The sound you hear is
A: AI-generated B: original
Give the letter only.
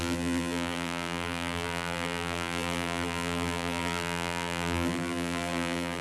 A